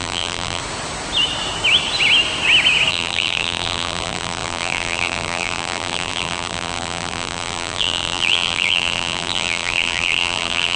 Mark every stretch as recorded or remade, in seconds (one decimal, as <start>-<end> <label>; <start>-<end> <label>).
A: 0.0-0.6 remade; 0.6-2.9 recorded; 2.9-10.8 remade